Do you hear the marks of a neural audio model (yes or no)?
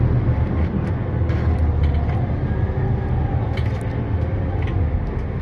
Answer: no